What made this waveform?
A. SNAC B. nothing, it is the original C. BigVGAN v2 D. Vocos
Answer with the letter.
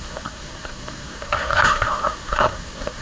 A